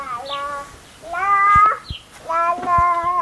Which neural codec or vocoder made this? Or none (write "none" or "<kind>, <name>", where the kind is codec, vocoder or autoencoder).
none